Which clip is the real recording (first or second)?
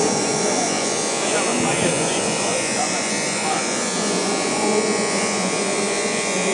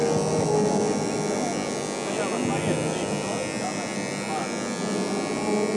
second